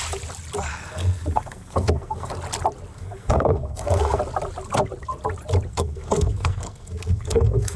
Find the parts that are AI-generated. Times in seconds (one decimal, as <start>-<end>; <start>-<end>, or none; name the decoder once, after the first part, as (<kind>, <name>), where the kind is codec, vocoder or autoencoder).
0.7-2.3 (codec, SNAC); 2.9-4.2; 5.7-7.8